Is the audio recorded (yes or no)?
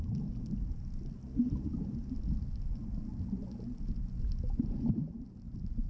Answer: yes